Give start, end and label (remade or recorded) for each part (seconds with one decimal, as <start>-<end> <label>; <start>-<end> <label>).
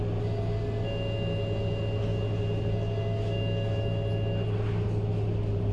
0.0-5.7 recorded